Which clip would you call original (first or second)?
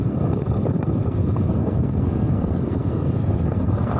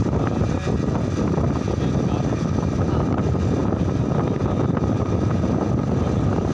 second